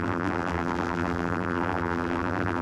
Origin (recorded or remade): remade